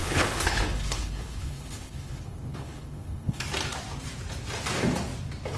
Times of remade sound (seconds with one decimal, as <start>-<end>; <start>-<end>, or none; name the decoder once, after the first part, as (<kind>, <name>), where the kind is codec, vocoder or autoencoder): 0.0-3.4 (codec, HILCodec)